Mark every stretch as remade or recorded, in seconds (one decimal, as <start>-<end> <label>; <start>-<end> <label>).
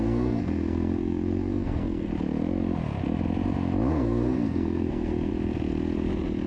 0.0-2.1 remade; 2.1-3.9 recorded; 3.9-5.3 remade; 5.3-6.5 recorded